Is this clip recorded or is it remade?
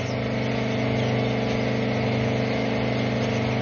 recorded